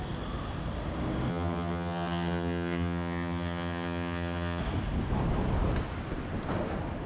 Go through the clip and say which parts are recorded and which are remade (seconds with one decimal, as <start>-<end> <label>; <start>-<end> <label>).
0.0-1.3 recorded; 1.3-4.6 remade; 4.6-7.1 recorded